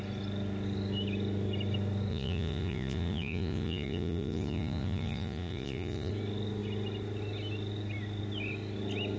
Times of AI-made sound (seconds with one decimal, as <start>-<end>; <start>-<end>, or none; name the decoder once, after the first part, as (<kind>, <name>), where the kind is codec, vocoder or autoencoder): 2.1-6.1 (vocoder, Vocos)